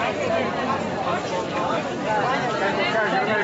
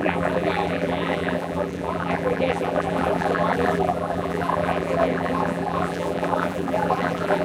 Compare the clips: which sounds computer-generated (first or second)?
second